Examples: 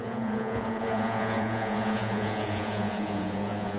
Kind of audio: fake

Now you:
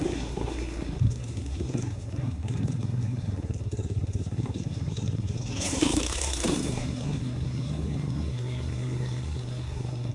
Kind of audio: fake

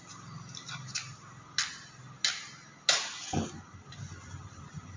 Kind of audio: real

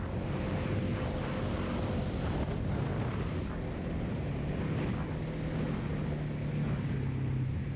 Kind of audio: real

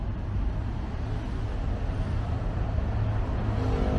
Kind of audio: real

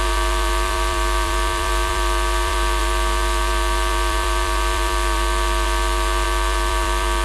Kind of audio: fake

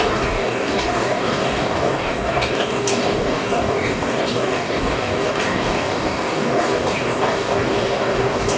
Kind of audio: fake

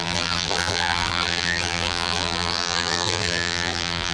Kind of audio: fake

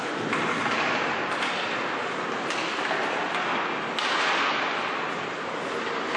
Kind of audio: real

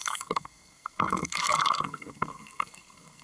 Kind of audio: fake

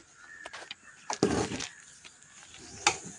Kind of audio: real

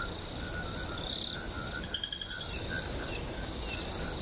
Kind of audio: real